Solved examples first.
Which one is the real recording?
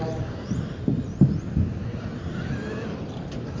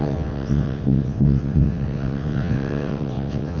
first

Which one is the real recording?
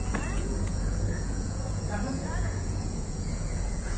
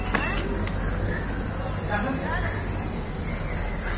second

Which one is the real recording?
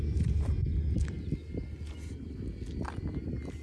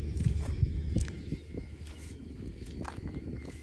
first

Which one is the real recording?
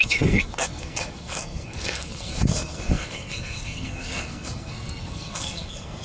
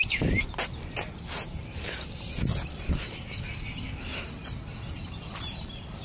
second